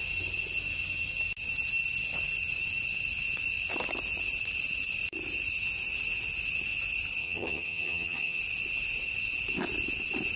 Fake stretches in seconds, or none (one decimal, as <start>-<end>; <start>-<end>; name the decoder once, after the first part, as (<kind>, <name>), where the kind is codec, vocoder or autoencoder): 7.2-8.4 (vocoder, HiFi-GAN)